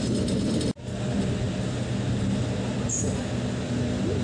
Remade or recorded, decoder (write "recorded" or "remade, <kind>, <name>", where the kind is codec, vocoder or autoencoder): recorded